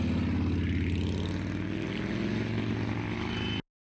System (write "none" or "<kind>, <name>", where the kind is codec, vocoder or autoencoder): none